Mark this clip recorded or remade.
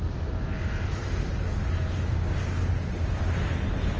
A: recorded